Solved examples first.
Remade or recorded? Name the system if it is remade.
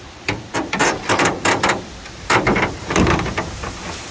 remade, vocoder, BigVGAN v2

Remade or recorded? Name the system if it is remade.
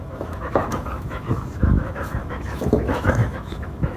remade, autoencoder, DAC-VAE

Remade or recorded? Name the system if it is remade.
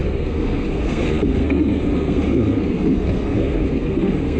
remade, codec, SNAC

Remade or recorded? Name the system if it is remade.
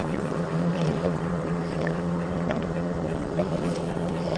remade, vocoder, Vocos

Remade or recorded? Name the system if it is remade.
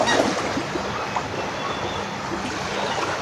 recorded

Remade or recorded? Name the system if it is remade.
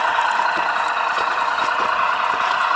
remade, vocoder, Vocos